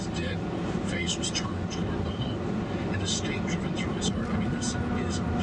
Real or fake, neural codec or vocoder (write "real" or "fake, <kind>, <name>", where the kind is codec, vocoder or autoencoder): real